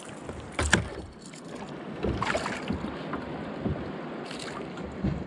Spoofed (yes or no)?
no